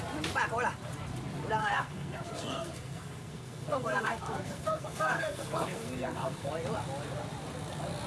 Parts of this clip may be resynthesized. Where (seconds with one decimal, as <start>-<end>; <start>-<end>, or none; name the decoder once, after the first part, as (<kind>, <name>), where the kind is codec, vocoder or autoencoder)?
1.6-6.5 (codec, SNAC)